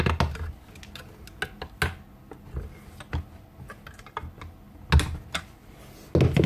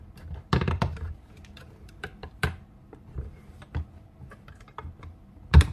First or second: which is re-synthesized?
second